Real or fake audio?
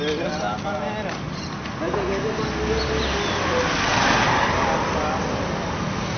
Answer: real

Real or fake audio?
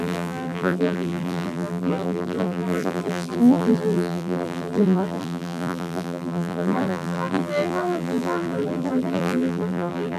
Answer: fake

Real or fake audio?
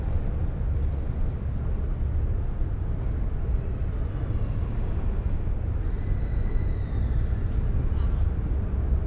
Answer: real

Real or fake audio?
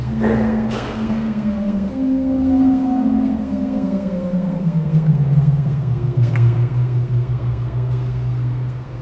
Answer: fake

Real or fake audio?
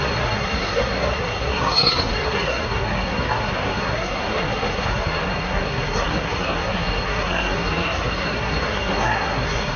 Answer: fake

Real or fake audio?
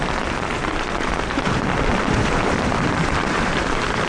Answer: fake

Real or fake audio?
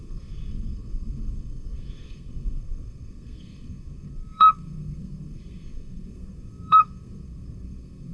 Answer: fake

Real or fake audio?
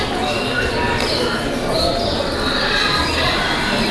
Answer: real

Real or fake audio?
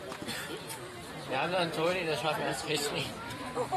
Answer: real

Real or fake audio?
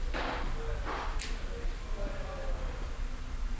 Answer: real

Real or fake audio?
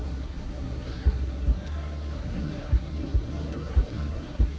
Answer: fake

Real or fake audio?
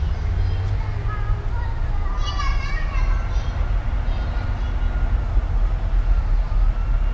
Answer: real